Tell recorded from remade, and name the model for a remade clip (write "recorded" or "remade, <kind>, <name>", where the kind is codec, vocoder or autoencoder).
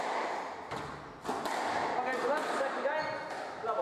recorded